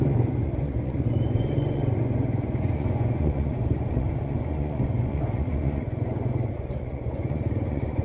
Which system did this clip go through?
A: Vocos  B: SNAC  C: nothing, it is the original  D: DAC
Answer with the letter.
A